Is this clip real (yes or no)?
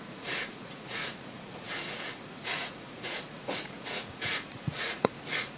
no